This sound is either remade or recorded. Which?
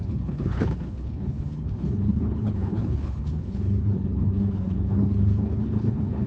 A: remade